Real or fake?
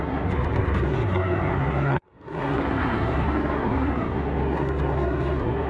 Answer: fake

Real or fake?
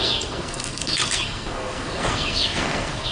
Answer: fake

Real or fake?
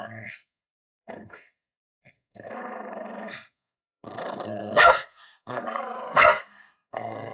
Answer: fake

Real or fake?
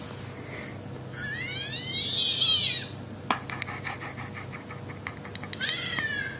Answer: real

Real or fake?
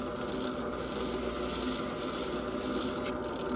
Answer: real